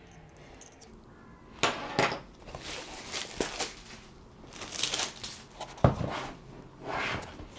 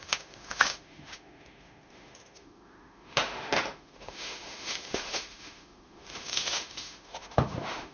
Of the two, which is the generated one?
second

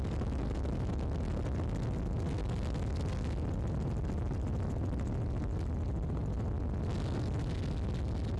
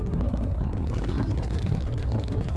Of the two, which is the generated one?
second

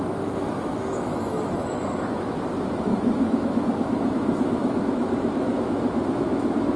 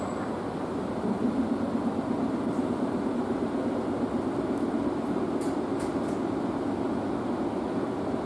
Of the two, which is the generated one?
first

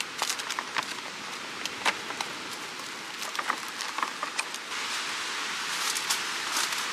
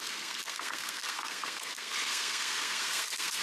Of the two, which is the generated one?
second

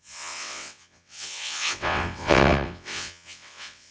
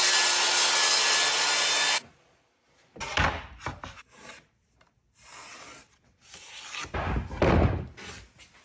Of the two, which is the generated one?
first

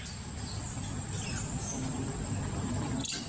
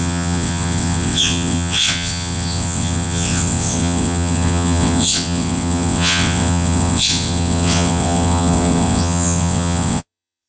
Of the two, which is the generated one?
second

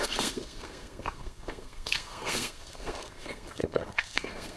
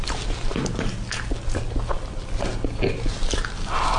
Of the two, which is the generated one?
first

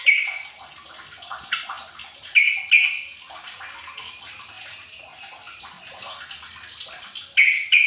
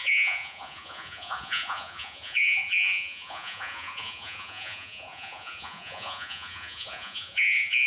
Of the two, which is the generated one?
second